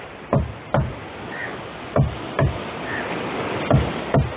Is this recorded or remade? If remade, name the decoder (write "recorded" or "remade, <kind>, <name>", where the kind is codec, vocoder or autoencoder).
recorded